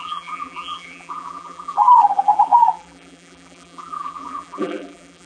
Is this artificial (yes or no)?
yes